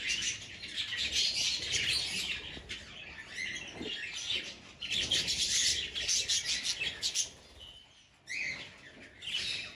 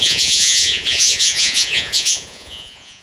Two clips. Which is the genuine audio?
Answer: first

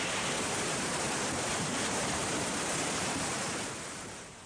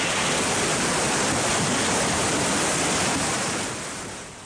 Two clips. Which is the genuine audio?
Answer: second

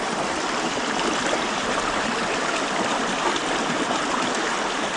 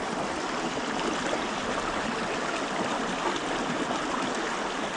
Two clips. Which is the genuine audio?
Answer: second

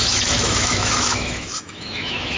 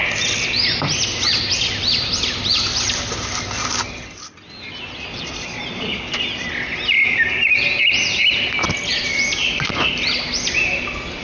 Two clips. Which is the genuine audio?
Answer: second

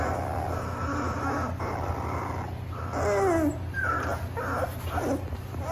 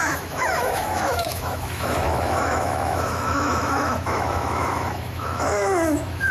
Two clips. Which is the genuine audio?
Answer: first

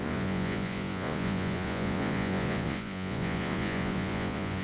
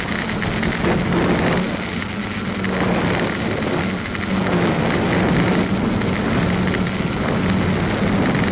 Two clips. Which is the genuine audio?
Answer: second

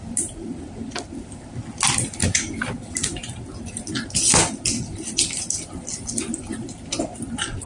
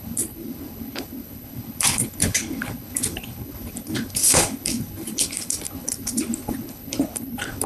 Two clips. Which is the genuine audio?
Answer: first